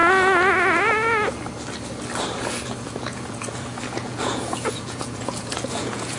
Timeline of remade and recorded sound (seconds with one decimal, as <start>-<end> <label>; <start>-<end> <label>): 0.0-2.5 recorded; 2.5-6.2 remade